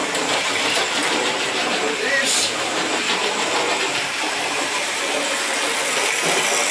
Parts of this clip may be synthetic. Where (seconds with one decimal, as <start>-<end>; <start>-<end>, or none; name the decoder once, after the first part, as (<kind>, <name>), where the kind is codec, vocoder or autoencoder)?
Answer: 0.0-0.5 (vocoder, BigVGAN v2); 1.0-5.0